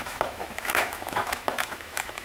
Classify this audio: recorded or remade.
remade